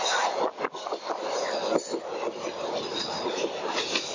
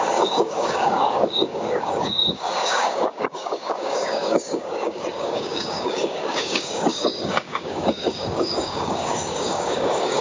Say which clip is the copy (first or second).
second